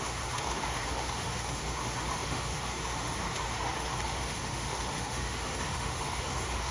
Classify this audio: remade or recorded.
remade